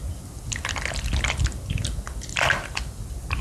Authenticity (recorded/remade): recorded